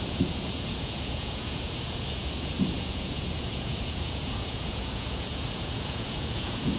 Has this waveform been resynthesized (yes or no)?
yes